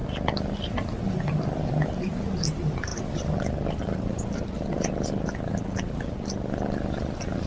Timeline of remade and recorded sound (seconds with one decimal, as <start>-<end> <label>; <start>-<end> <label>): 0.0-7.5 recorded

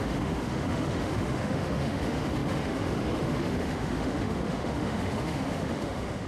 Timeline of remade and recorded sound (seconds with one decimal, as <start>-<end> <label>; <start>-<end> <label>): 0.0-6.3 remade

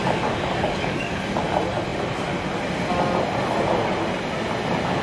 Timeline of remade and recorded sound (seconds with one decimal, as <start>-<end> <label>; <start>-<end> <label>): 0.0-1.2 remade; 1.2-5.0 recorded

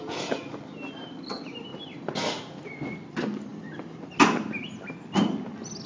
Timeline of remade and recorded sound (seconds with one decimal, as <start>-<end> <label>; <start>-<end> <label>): 0.0-5.9 recorded

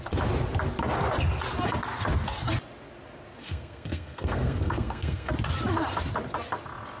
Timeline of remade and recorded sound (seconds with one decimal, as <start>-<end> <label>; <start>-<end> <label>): 0.0-3.4 recorded; 3.4-5.3 remade; 5.3-7.0 recorded

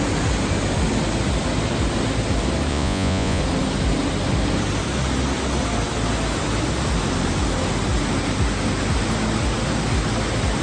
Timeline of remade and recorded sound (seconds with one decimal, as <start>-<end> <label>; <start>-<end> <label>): 0.0-2.7 recorded; 2.7-3.4 remade; 3.4-10.6 recorded

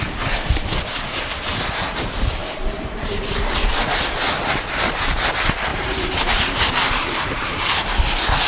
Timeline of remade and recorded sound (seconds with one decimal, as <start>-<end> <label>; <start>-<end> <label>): 0.0-2.4 recorded; 2.4-3.7 remade; 3.7-5.7 recorded; 5.7-8.0 remade; 8.0-8.5 recorded